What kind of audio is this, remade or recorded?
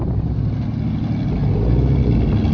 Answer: recorded